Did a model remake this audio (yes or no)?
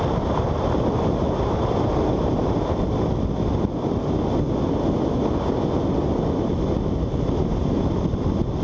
no